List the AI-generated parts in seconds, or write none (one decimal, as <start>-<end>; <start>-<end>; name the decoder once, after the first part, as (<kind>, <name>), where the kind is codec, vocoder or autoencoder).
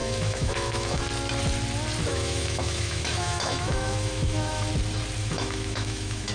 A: 0.0-1.0 (autoencoder, DAC-VAE); 2.1-4.7; 5.2-6.3